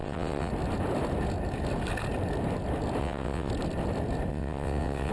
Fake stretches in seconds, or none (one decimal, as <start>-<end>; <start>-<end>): 0.0-0.5; 3.0-3.5; 4.3-5.1